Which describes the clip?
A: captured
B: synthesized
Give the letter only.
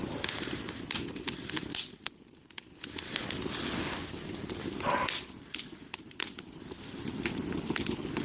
A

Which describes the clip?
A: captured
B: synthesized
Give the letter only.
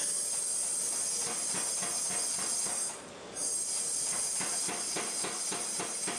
A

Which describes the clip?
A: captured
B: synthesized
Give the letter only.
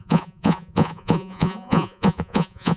B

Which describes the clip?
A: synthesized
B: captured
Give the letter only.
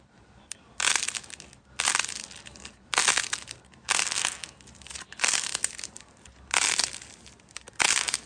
B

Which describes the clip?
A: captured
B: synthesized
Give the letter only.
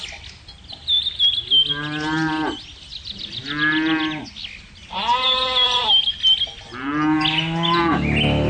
A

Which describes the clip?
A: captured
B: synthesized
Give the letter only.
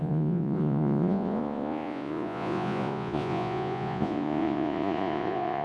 B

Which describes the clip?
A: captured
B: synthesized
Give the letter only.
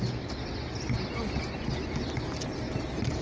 A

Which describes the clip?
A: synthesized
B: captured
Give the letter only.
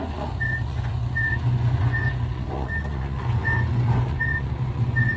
A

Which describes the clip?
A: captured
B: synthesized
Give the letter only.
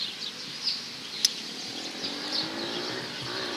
A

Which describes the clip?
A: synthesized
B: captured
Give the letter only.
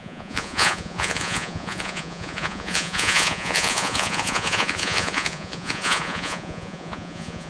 A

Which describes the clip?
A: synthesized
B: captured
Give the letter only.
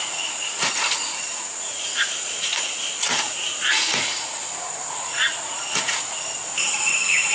A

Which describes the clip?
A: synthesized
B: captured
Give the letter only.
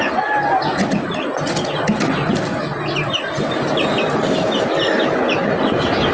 B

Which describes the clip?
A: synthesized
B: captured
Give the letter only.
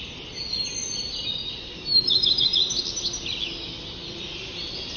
B